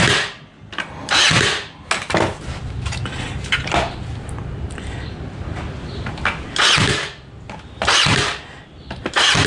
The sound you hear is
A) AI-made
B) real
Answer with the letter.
B